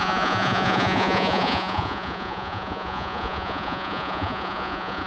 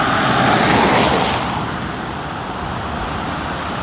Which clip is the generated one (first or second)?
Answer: first